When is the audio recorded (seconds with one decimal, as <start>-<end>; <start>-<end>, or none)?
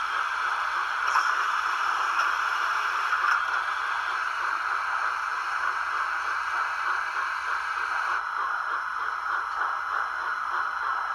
0.0-11.1